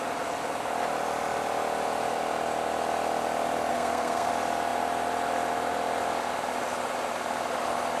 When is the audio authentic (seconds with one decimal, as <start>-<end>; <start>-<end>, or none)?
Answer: 0.0-3.7; 4.3-8.0